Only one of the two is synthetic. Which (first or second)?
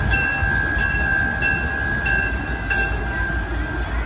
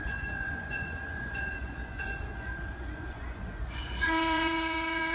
second